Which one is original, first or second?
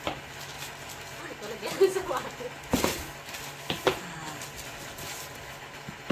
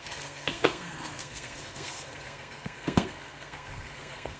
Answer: first